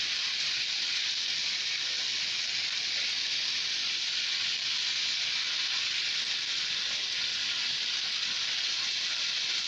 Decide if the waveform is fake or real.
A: real